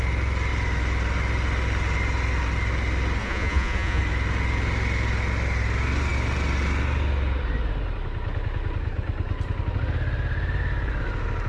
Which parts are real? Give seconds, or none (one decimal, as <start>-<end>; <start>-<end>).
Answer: 0.0-3.2; 4.0-11.5

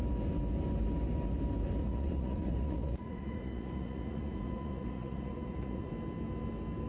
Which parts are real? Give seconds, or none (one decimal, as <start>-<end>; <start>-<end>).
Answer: 0.0-1.8; 5.9-6.9

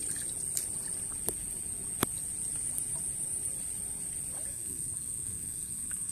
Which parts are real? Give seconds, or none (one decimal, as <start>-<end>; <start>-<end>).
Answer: 0.0-4.5

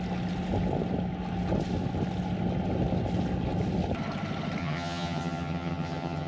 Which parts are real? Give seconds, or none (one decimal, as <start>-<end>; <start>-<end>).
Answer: 0.0-4.6

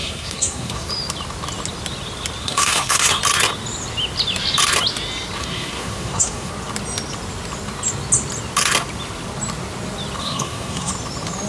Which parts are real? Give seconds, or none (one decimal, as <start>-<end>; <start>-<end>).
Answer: 0.9-2.4; 3.2-5.4; 6.5-10.2; 10.9-11.5